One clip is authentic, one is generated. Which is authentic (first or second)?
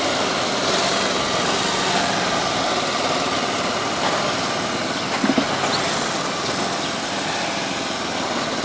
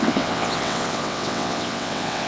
first